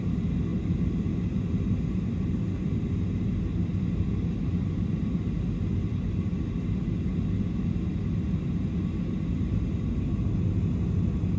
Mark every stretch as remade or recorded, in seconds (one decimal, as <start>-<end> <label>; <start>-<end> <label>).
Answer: 0.0-11.4 recorded